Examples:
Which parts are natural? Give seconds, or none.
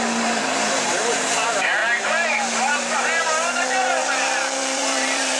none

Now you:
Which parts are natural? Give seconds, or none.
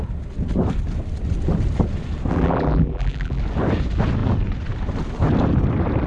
0.0-2.3; 3.4-6.1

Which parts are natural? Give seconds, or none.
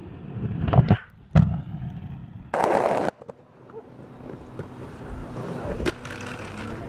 1.1-5.2; 5.9-6.9